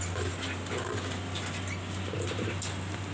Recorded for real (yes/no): yes